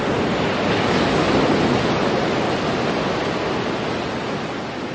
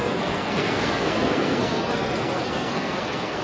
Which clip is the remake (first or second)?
second